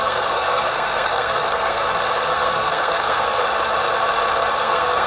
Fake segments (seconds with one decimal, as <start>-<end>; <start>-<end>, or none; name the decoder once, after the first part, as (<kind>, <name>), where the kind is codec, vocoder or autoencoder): 0.0-1.8 (codec, SNAC); 2.3-3.4; 4.5-5.1